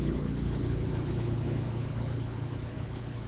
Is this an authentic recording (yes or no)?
no